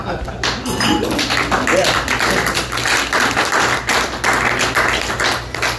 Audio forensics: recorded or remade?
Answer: recorded